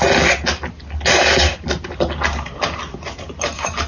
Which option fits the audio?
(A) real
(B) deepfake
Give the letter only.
A